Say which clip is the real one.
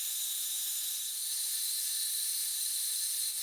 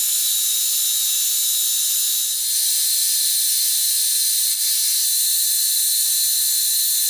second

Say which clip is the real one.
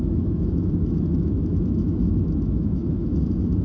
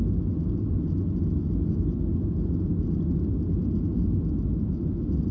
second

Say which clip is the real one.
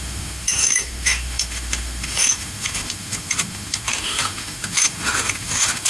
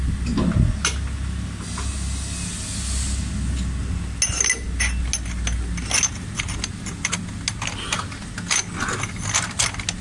second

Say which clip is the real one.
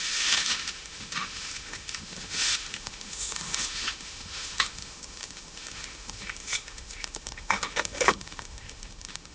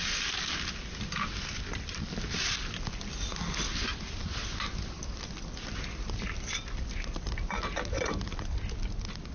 second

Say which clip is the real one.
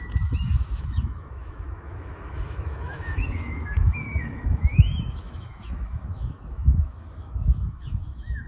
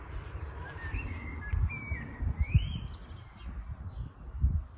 second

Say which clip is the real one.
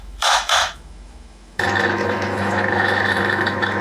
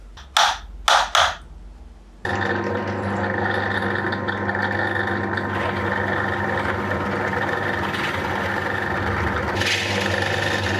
second